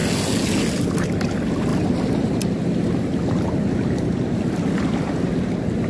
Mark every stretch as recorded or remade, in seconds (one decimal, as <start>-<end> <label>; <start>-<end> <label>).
0.0-1.7 recorded; 1.7-5.2 remade; 5.2-5.9 recorded